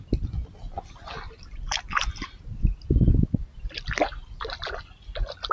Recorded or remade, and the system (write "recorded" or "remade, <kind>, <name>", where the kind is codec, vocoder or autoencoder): recorded